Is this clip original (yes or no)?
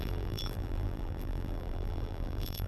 no